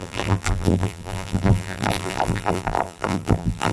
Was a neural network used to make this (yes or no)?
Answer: yes